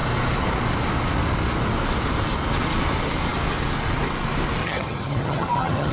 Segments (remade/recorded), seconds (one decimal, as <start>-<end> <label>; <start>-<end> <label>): 0.0-4.6 recorded; 4.6-5.9 remade